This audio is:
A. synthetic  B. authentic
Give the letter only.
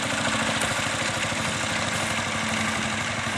B